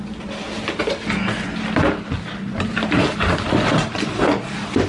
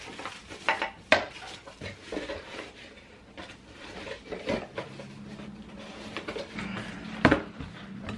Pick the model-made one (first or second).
second